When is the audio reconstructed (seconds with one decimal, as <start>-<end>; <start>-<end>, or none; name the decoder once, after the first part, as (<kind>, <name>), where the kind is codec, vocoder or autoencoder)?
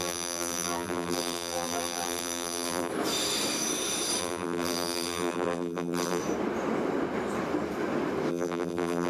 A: 0.0-2.9 (vocoder, BigVGAN v2); 4.2-6.2; 8.3-9.1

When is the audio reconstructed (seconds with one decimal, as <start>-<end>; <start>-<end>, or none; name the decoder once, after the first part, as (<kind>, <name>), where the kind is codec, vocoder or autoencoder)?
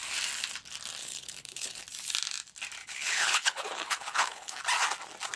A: 1.0-1.8 (codec, HILCodec); 2.8-4.6